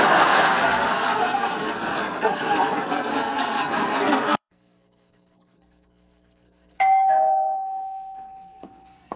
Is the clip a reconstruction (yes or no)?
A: yes